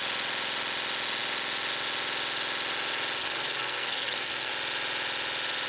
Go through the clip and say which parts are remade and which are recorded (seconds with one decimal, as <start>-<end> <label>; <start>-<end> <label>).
0.0-3.2 recorded; 3.2-4.5 remade; 4.5-5.7 recorded